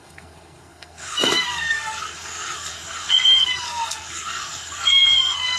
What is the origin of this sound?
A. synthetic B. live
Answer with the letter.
A